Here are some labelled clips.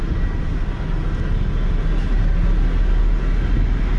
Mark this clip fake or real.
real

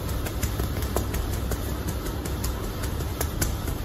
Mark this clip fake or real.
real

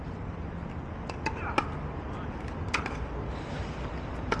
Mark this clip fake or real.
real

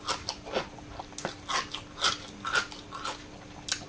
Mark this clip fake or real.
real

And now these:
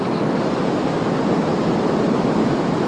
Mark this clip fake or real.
fake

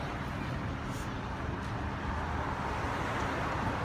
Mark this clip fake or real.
real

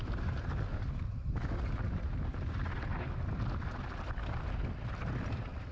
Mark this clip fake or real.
real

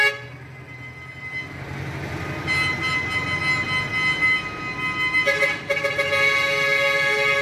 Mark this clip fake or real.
real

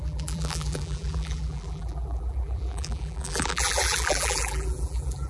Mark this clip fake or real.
fake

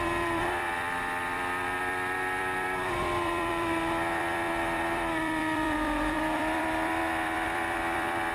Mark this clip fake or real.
fake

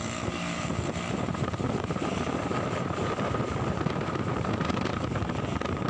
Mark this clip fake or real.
fake